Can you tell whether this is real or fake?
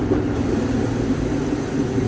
real